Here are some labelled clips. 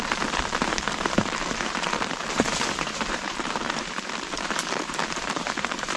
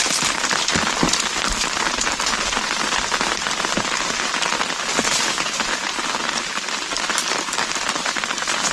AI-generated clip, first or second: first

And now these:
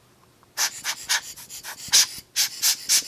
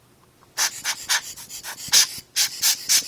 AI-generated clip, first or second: second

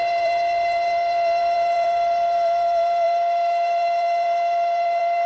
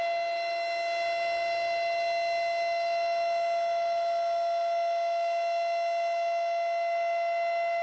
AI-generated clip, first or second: first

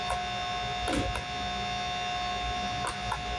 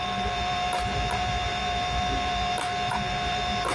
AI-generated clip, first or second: second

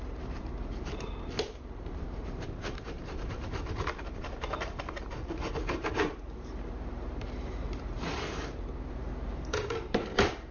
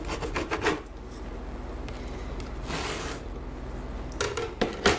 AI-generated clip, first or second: first